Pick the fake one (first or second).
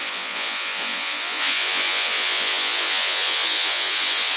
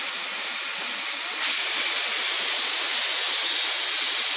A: first